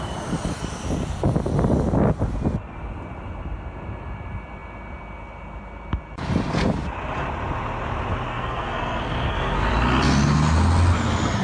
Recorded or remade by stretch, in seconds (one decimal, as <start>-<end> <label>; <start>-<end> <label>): 0.0-8.3 recorded; 8.3-9.7 remade; 9.7-11.4 recorded